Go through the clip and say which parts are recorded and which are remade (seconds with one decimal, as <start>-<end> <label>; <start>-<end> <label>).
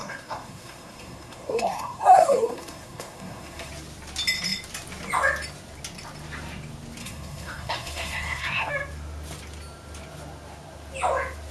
0.0-3.7 remade; 3.7-7.0 recorded; 7.0-8.7 remade; 8.7-11.5 recorded